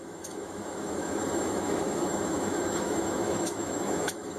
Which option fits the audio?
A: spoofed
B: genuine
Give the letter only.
A